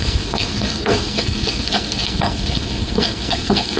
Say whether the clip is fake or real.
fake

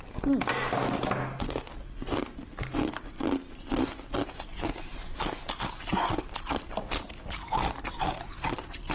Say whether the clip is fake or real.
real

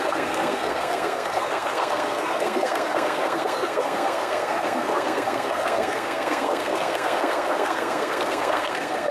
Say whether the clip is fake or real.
fake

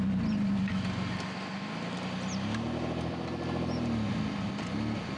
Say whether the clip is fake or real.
real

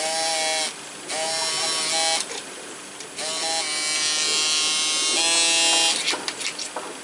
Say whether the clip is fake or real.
real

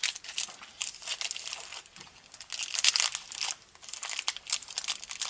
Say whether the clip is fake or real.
real